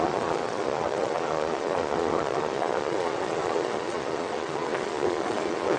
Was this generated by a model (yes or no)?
yes